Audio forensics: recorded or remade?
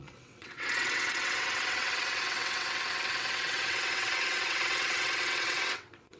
remade